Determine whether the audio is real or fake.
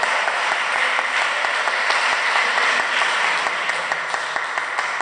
real